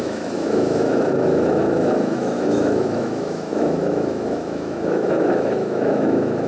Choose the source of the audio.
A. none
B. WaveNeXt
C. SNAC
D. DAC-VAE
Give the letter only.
D